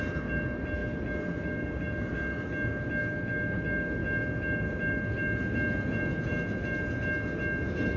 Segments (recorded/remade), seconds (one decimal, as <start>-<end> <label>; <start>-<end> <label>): 0.0-8.0 recorded